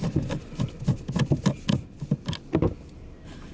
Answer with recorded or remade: recorded